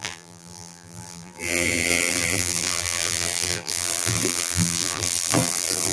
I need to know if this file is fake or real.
fake